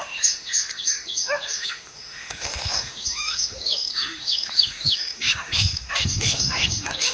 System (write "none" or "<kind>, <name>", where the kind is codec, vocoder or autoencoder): autoencoder, DAC-VAE